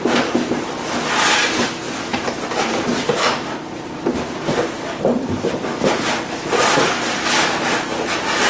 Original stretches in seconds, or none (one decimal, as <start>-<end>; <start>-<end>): 0.0-8.5